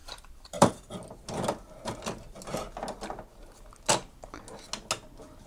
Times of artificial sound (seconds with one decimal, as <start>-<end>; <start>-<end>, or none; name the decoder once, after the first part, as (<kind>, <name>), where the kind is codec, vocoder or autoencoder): 0.0-0.7 (vocoder, BigVGAN v2)